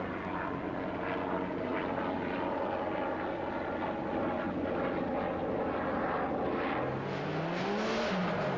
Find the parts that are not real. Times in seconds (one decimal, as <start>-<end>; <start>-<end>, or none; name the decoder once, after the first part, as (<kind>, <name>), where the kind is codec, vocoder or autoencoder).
none